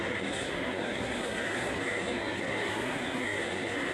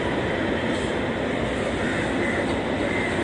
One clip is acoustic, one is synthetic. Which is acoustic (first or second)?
second